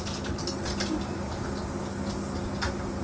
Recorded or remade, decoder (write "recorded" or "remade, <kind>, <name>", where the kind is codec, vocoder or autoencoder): recorded